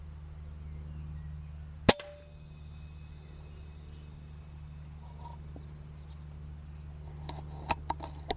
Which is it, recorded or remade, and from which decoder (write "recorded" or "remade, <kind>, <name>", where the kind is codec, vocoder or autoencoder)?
recorded